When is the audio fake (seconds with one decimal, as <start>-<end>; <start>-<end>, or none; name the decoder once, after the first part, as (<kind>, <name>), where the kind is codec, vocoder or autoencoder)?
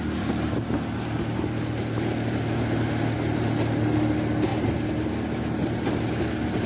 none